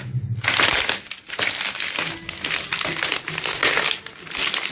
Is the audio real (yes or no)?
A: yes